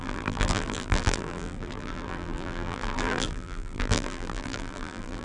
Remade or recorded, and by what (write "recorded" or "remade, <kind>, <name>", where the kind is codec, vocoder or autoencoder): remade, vocoder, BigVGAN v2